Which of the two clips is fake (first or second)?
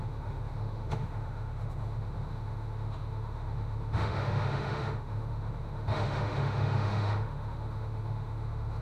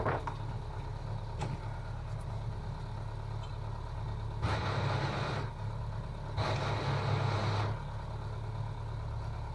first